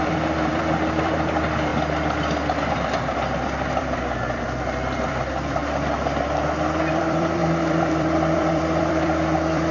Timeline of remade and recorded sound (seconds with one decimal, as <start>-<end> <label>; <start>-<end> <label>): 0.0-1.7 remade; 1.7-2.7 recorded; 2.7-5.6 remade; 5.6-6.9 recorded; 6.9-9.7 remade